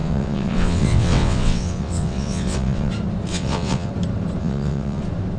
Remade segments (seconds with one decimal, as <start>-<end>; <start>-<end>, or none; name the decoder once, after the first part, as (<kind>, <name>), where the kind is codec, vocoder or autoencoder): 0.0-2.9 (vocoder, WaveNeXt); 3.3-3.9; 4.4-5.0